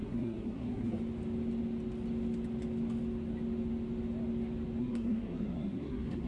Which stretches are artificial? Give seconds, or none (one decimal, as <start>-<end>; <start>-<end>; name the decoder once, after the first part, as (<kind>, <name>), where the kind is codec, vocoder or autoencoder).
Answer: 0.0-1.0 (codec, SNAC); 4.8-6.3

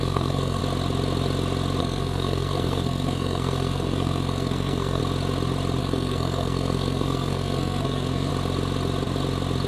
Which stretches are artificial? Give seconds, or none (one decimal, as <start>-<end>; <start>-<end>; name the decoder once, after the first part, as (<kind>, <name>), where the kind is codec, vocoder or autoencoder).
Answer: 0.0-0.6 (codec, SNAC); 1.8-5.0; 5.8-8.3

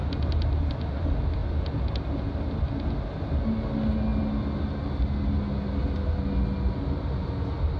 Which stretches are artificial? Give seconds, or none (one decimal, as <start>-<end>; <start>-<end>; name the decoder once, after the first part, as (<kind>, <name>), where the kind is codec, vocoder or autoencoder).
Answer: none

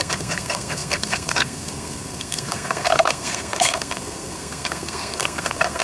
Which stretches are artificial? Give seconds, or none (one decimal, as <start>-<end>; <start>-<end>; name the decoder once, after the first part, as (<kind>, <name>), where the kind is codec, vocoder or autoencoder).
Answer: 0.0-5.8 (codec, SNAC)

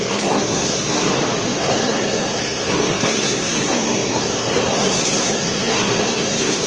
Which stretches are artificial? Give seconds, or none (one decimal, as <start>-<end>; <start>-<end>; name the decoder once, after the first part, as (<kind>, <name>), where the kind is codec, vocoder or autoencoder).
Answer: 0.0-1.1 (codec, SNAC); 1.6-6.7

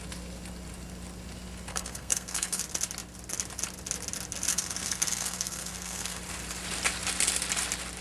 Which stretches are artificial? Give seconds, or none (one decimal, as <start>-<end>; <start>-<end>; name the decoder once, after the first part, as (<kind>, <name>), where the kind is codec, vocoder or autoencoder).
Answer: 1.7-2.6 (codec, SNAC); 4.5-6.2